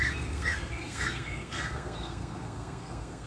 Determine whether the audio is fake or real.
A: fake